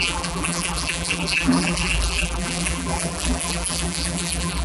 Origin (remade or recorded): remade